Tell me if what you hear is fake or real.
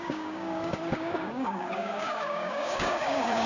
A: fake